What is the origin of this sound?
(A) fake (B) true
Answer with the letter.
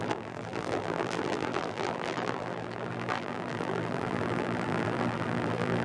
A